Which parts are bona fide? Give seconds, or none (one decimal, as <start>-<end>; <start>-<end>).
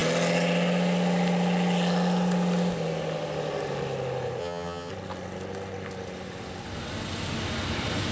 0.0-4.4; 4.9-8.1